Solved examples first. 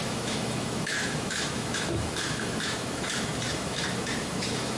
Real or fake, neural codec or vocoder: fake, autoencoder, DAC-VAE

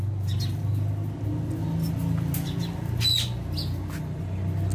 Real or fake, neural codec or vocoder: real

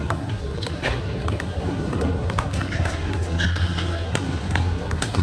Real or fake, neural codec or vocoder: fake, codec, SNAC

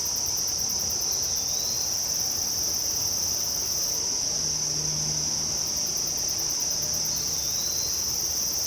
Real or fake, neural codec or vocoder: real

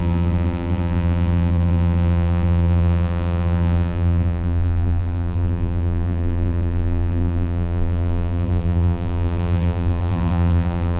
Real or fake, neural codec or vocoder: fake, vocoder, BigVGAN v2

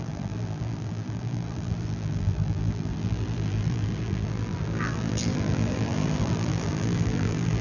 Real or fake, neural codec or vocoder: fake, vocoder, BigVGAN v2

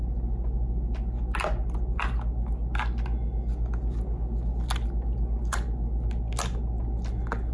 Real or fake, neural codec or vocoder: real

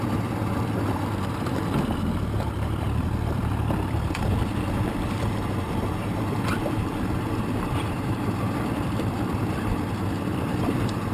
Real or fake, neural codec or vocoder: fake, vocoder, BigVGAN v2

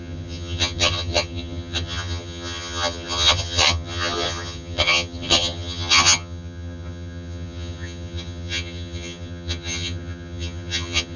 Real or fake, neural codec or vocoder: fake, vocoder, HiFi-GAN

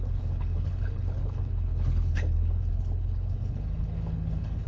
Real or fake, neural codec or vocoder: fake, codec, HILCodec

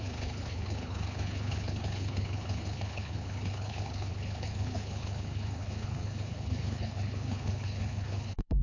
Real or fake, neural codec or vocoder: fake, codec, HILCodec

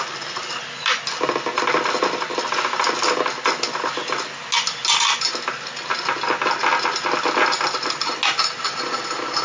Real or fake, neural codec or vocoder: real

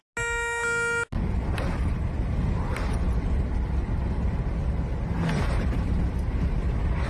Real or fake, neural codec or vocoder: real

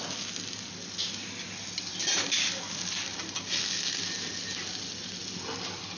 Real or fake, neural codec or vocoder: real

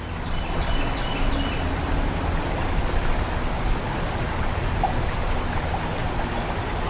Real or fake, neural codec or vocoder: real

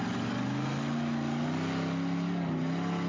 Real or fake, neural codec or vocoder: real